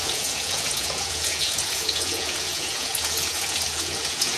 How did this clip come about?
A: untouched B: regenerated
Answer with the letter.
B